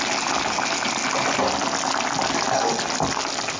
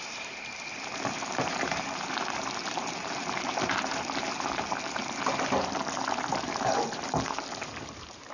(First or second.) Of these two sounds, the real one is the first